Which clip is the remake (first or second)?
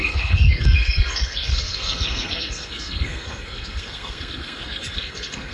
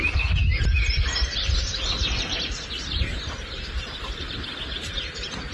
first